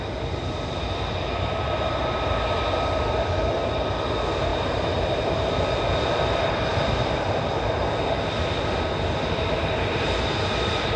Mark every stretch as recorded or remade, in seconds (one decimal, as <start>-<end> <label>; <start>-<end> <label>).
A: 0.0-4.5 recorded; 4.5-5.3 remade; 5.3-11.0 recorded